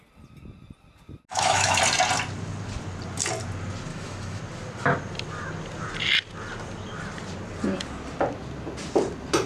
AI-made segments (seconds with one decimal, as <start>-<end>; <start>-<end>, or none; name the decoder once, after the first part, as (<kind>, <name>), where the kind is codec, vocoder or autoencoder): 1.3-1.8 (autoencoder, DAC-VAE); 3.9-4.4